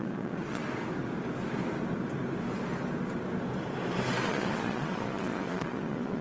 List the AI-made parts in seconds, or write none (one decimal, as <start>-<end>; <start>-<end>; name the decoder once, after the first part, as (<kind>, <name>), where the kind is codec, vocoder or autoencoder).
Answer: 0.0-0.6 (vocoder, Vocos); 4.3-6.2